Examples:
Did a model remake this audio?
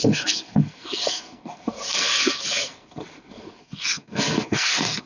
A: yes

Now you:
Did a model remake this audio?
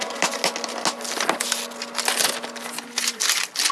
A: no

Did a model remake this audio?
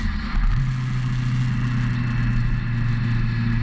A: no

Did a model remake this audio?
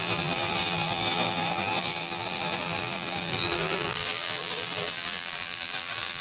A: yes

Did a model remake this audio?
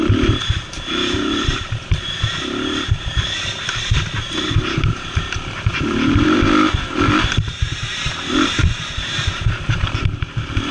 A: yes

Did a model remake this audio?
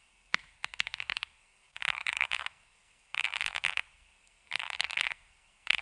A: yes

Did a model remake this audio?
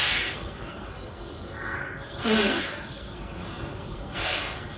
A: yes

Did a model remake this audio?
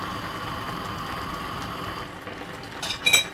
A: no